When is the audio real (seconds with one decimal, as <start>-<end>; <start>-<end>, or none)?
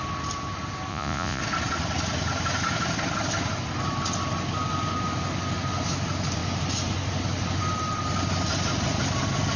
0.0-0.9; 1.4-9.6